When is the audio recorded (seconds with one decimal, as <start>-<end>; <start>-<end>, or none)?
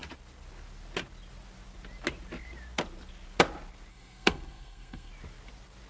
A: 0.0-3.9; 5.1-5.9